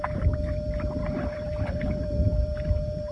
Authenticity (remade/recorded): remade